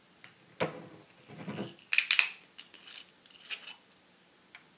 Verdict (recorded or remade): recorded